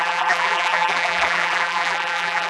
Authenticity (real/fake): fake